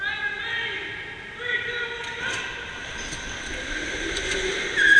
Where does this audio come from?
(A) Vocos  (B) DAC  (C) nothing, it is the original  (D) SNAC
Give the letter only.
C